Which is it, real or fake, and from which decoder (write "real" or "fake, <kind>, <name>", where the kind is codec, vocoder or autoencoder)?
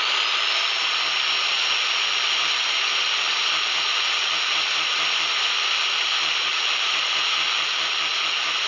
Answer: real